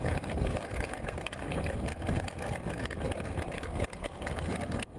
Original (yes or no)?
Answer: no